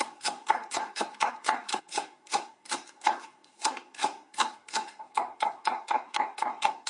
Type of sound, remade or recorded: remade